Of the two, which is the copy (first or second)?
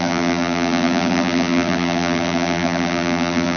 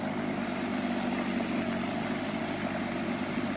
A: first